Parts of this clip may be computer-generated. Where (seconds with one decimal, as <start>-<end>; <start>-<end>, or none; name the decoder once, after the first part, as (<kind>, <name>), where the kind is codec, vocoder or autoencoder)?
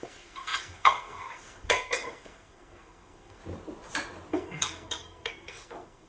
0.0-3.4 (codec, SNAC); 4.3-6.1